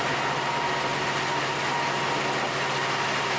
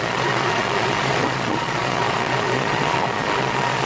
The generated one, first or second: second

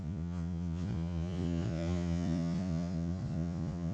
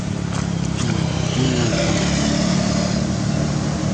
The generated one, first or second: first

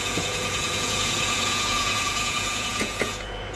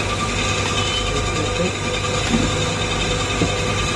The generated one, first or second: first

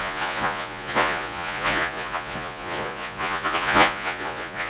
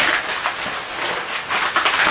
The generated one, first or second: first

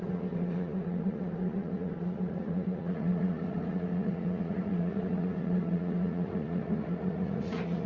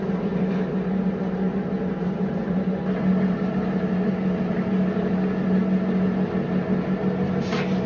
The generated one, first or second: first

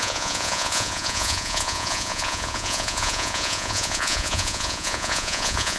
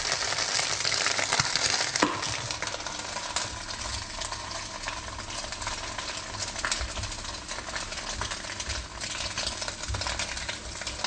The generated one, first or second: first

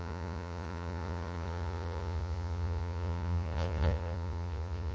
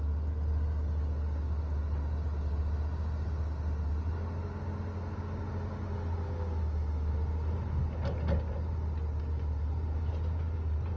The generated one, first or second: first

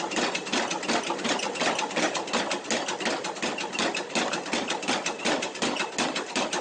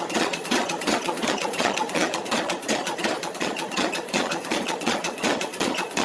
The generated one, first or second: second